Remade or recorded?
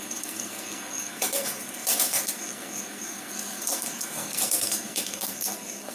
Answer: remade